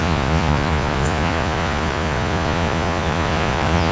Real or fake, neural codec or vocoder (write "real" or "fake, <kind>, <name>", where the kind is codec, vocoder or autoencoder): fake, vocoder, Vocos